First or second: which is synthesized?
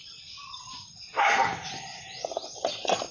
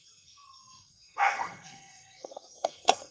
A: second